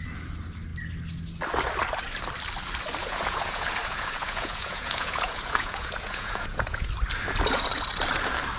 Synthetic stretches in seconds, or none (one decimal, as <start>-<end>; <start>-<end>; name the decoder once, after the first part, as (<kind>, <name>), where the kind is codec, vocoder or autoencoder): 3.0-6.9 (vocoder, Vocos)